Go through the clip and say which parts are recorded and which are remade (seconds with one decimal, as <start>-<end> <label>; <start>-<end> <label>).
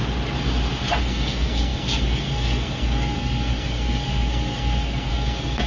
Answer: 0.0-1.0 recorded; 1.0-5.7 remade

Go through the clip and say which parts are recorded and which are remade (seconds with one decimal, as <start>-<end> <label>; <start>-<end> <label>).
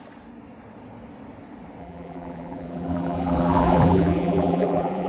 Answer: 0.0-1.8 recorded; 1.8-5.1 remade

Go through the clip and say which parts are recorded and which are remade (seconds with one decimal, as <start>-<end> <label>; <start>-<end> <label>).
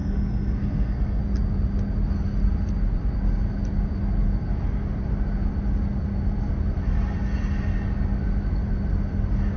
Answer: 0.0-1.2 remade; 1.2-9.6 recorded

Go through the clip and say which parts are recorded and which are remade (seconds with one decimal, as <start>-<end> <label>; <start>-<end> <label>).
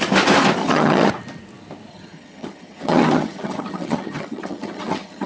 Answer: 0.0-0.6 recorded; 0.6-1.1 remade; 1.1-1.9 recorded; 1.9-5.3 remade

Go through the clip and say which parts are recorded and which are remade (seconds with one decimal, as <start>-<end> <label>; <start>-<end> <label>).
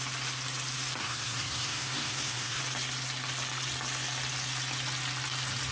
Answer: 0.0-1.0 recorded; 1.0-2.6 remade; 2.6-5.7 recorded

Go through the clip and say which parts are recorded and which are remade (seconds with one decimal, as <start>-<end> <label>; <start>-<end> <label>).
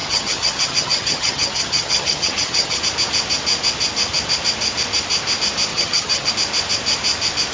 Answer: 0.0-2.8 remade; 2.8-5.7 recorded; 5.7-6.3 remade; 6.3-7.5 recorded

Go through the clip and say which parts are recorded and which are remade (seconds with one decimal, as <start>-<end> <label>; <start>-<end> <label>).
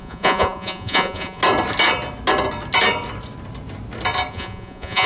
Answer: 0.0-1.4 remade; 1.4-4.3 recorded; 4.3-5.1 remade